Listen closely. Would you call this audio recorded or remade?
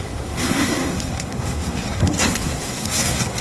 remade